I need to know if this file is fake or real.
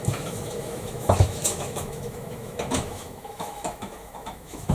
fake